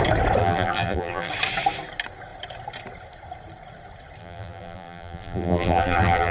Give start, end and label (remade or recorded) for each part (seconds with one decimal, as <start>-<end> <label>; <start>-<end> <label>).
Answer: 0.0-0.4 recorded; 0.4-1.3 remade; 1.3-4.2 recorded; 4.2-6.3 remade